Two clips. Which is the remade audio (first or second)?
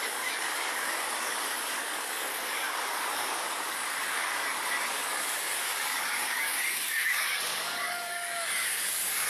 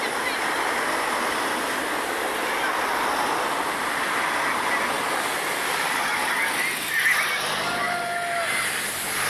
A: first